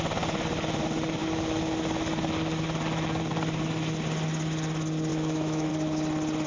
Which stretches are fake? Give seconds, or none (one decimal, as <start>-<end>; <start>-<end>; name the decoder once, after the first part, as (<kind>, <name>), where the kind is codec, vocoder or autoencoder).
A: 5.1-5.7 (autoencoder, DAC-VAE)